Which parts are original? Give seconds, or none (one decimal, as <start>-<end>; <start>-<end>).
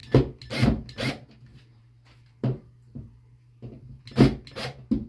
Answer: 0.0-1.5; 4.0-5.1